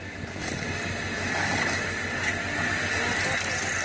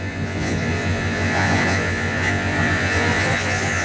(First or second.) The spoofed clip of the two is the second